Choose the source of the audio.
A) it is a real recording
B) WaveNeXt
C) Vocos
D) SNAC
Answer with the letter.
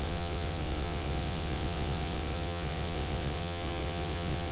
B